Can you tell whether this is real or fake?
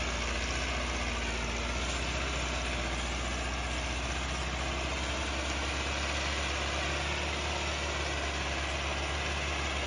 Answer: real